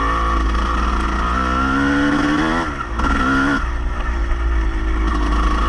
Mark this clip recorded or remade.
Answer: recorded